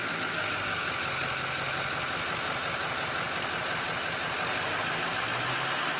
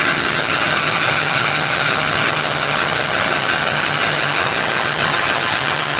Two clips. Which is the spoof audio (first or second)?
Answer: second